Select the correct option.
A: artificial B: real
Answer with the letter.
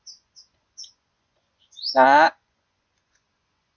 A